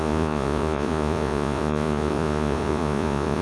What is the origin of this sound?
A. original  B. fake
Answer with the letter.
B